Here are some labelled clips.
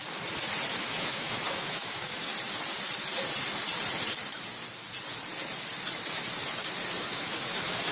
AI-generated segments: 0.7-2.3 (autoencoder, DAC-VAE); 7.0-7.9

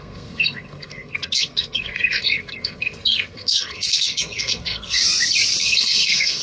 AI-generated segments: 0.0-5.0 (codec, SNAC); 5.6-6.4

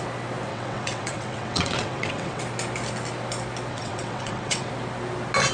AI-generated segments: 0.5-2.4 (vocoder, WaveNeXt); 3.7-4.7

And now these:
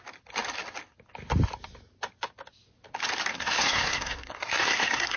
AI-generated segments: 3.3-5.2 (codec, SNAC)

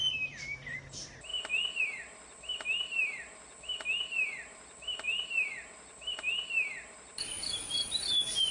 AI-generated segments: 0.0-1.3 (vocoder, BigVGAN v2); 1.8-8.5